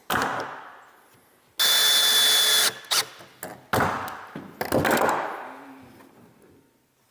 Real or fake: real